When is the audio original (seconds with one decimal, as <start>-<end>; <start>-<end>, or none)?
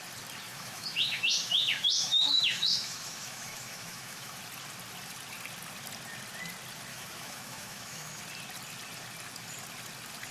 0.0-0.5; 4.4-6.9; 8.2-10.3